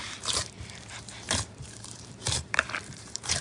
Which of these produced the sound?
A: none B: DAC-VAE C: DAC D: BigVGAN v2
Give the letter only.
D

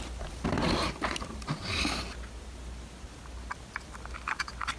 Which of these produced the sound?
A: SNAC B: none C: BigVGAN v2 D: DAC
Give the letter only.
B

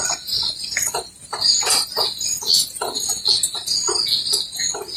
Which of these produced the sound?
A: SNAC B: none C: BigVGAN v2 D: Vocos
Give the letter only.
B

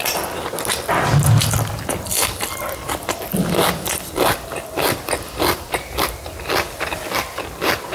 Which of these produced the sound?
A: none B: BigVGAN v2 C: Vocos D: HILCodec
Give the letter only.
B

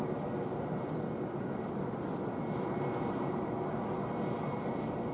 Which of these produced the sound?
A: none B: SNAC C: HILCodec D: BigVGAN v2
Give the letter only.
A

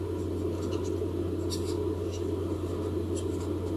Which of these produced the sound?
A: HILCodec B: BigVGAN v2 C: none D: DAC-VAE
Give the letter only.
C